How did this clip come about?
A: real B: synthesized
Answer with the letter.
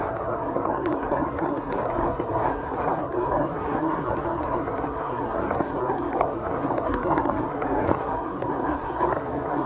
B